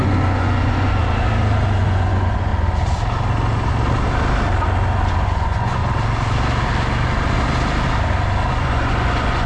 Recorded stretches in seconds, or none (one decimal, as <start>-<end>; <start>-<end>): 1.0-1.8; 2.5-5.2; 5.8-8.5